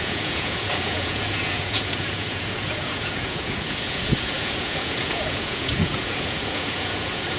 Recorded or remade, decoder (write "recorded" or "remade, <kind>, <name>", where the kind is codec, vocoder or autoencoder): remade, vocoder, Vocos